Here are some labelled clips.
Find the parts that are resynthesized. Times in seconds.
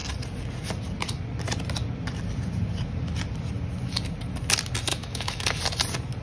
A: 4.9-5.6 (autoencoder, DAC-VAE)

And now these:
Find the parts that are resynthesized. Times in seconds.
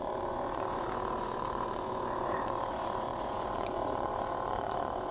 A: 0.0-5.1 (vocoder, Vocos)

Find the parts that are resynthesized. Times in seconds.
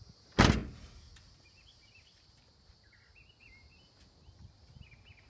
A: none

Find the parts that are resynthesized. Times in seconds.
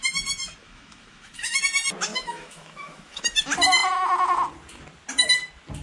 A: 0.6-1.6 (autoencoder, DAC-VAE); 2.1-3.2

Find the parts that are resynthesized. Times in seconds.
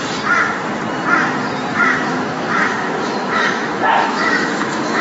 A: 1.7-5.0 (autoencoder, DAC-VAE)